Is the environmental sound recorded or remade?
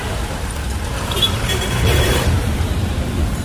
remade